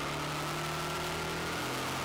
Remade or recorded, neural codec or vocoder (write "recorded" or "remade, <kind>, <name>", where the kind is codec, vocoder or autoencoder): recorded